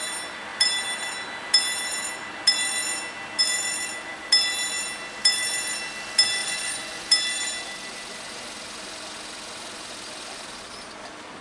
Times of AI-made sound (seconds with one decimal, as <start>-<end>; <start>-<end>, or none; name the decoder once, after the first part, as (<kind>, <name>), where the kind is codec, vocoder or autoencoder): 6.4-7.1 (vocoder, Vocos)

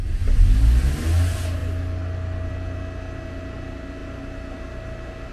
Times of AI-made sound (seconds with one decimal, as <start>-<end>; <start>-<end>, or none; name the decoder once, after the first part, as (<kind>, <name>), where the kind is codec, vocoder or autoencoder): none

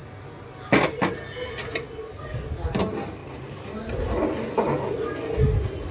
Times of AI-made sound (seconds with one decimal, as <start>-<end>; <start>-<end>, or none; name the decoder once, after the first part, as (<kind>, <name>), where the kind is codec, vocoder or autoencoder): none

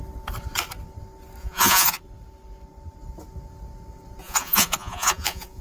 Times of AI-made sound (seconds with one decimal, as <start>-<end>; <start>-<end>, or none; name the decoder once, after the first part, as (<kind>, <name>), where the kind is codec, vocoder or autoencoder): 1.4-2.0 (vocoder, Vocos); 4.2-5.6